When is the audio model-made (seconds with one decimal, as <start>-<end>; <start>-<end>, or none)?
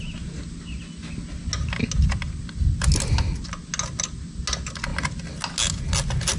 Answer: none